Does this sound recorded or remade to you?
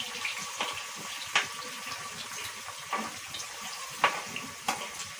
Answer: recorded